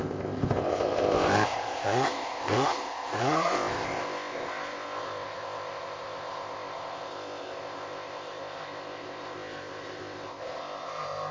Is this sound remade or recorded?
remade